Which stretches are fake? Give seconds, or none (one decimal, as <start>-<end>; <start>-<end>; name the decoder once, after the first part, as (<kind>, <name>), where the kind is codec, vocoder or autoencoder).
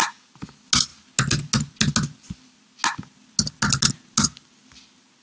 none